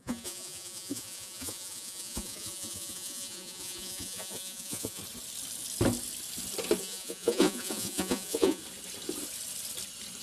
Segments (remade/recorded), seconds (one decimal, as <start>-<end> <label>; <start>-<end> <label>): 0.0-5.0 remade; 5.0-6.8 recorded; 6.8-8.6 remade; 8.6-10.2 recorded